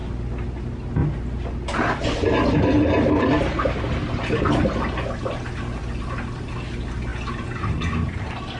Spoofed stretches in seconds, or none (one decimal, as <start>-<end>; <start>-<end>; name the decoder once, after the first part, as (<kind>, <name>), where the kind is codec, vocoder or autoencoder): none